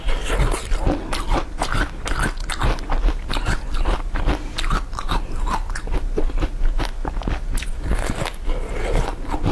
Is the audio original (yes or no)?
yes